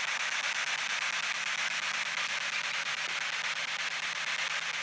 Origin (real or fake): real